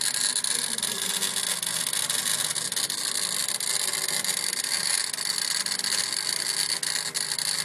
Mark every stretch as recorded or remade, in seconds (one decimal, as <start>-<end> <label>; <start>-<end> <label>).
0.0-7.6 recorded